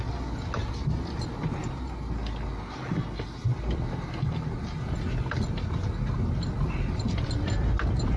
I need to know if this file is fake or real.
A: real